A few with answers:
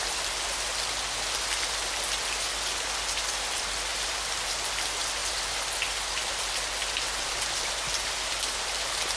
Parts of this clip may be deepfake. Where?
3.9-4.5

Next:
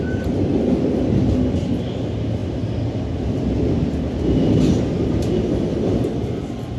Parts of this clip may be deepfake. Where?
none

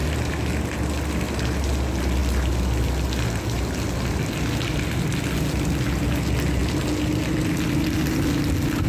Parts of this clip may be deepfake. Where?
none